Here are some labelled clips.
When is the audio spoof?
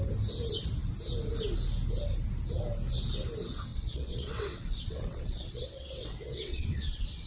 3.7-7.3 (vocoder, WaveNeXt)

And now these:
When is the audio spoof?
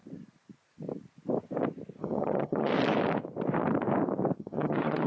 2.0-2.7 (vocoder, HiFi-GAN); 4.4-5.1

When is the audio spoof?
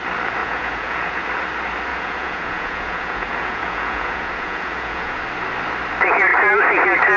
0.4-1.2 (vocoder, Vocos); 1.9-5.2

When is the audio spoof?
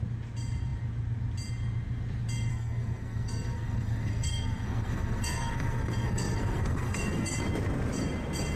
2.5-7.4 (codec, SNAC)